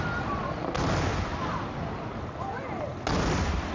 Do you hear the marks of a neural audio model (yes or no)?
no